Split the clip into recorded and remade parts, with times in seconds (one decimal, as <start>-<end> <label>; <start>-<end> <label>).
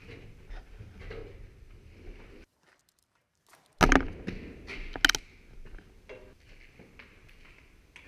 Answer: 0.0-1.2 recorded; 1.2-3.4 remade; 3.4-8.1 recorded